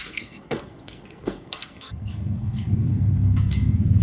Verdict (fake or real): fake